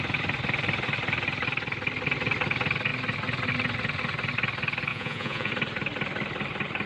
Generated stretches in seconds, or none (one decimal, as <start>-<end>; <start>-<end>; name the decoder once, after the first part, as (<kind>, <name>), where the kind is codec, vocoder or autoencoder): 4.9-5.5 (vocoder, Vocos)